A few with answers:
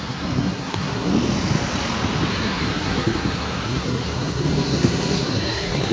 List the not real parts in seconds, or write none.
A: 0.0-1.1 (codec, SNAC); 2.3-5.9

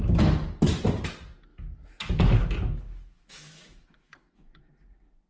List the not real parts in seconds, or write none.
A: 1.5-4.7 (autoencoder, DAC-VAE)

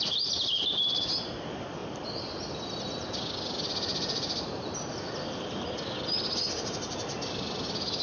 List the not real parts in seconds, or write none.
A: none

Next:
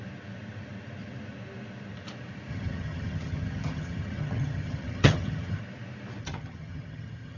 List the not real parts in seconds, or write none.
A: 2.5-5.6 (vocoder, HiFi-GAN); 6.2-7.4

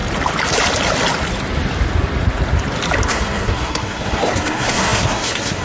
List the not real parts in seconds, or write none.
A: 3.1-5.6 (codec, SNAC)

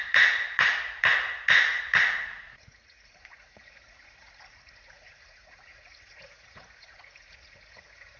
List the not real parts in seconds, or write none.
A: 0.0-8.2 (vocoder, Vocos)